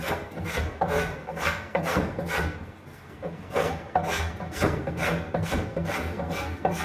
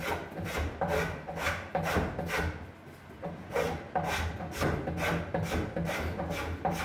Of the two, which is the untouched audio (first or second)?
second